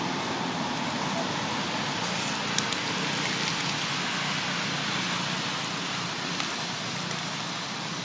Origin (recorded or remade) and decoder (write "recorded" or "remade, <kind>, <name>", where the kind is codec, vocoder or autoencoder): recorded